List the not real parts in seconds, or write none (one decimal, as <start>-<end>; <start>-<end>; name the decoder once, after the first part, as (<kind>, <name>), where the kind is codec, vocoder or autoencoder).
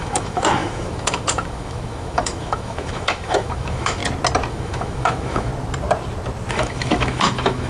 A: 0.0-4.0 (autoencoder, DAC-VAE); 4.5-5.5; 6.5-7.7